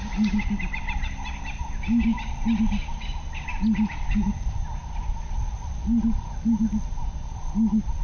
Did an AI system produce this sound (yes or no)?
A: no